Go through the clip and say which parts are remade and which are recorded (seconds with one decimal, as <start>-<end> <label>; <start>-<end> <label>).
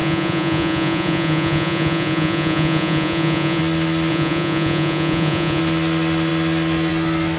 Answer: 0.0-3.6 remade; 3.6-4.1 recorded; 4.1-5.6 remade; 5.6-7.4 recorded